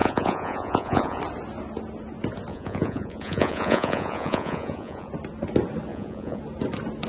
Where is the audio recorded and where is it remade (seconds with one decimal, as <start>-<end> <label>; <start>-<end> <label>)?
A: 0.0-1.2 remade; 1.2-2.5 recorded; 2.5-5.1 remade; 5.1-5.9 recorded; 5.9-6.4 remade; 6.4-7.1 recorded